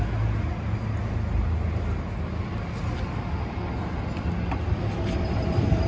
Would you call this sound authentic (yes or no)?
yes